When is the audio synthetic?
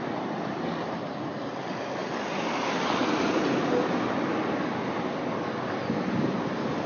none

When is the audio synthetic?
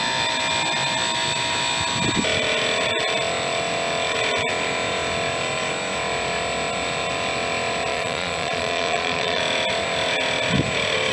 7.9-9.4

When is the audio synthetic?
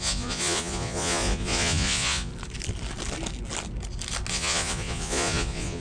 0.0-2.3; 4.3-5.8